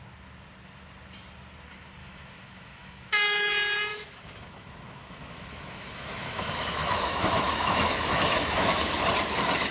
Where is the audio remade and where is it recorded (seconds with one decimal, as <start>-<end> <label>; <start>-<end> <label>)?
0.0-2.0 recorded; 2.0-3.5 remade; 3.5-3.9 recorded; 3.9-9.0 remade; 9.0-9.7 recorded